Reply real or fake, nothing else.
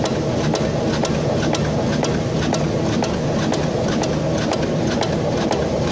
real